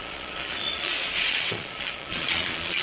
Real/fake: fake